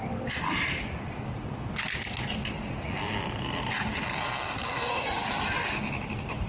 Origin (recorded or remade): recorded